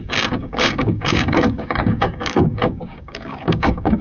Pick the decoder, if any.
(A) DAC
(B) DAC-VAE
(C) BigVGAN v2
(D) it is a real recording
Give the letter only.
A